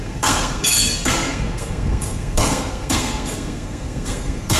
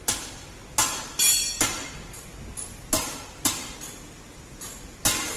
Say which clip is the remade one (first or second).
first